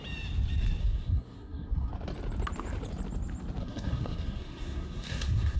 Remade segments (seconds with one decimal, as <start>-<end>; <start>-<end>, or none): 0.8-1.9; 3.6-5.6